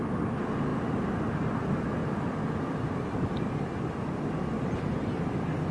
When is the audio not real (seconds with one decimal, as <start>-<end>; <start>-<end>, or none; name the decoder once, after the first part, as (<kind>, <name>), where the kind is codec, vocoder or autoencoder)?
2.0-3.5 (vocoder, BigVGAN v2)